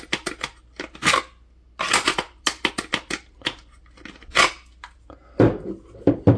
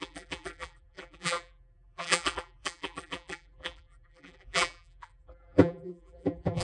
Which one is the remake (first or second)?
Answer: second